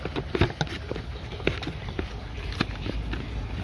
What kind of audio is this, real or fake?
real